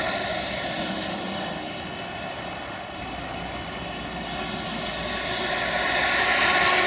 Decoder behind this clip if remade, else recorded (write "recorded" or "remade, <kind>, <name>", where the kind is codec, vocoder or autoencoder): recorded